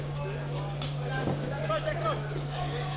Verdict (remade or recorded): remade